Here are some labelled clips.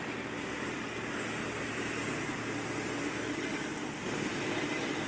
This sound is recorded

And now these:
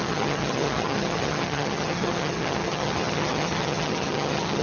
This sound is remade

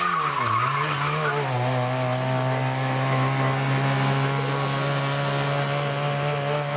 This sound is recorded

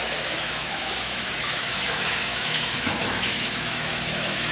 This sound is remade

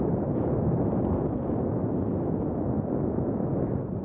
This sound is recorded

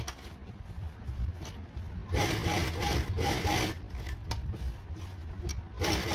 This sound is recorded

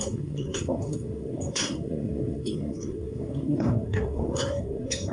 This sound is remade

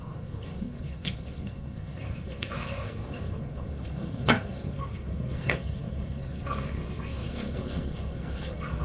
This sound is remade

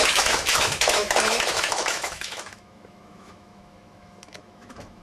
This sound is remade